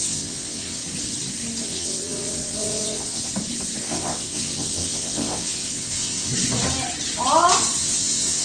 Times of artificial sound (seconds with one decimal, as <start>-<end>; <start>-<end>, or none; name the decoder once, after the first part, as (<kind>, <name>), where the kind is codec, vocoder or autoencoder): 0.0-0.8 (vocoder, WaveNeXt); 1.6-3.2; 3.8-6.3; 7.8-8.4